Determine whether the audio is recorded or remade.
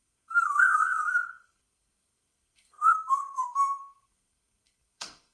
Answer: remade